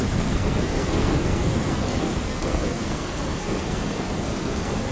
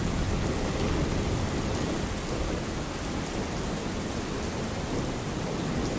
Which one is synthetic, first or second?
first